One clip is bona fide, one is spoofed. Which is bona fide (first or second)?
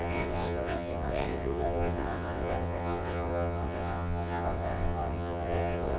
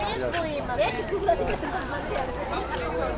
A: second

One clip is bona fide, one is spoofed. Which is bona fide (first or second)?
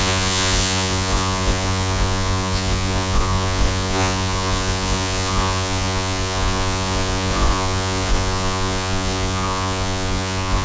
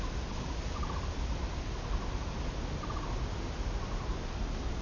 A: second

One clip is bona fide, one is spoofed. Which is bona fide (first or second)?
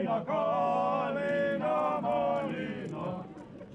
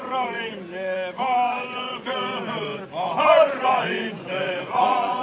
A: first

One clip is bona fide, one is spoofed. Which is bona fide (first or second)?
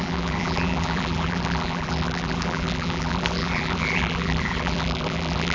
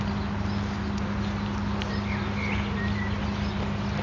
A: second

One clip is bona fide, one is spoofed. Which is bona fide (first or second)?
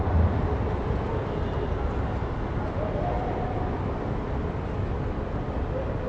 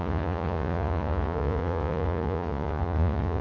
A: first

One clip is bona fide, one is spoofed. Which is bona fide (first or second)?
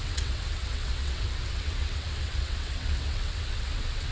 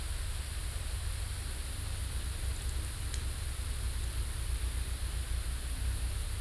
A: second